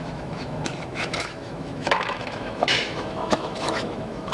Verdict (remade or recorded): remade